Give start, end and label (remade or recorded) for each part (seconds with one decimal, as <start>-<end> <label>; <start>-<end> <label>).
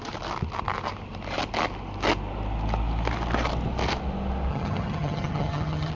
0.0-4.5 recorded; 4.5-5.9 remade